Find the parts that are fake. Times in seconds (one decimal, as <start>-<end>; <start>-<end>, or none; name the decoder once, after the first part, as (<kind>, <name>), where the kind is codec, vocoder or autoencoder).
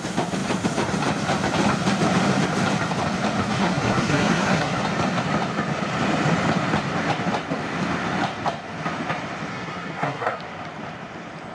3.4-4.8 (codec, SNAC); 9.5-10.4